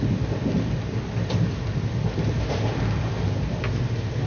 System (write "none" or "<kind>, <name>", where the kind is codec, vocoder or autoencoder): none